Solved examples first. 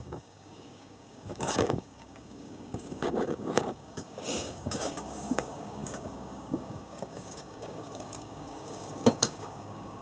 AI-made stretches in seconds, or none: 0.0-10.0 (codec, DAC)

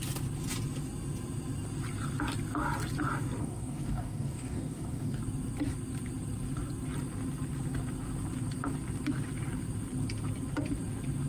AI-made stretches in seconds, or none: 3.4-5.2 (codec, DAC)